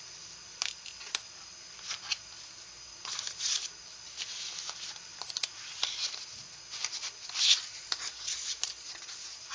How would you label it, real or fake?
real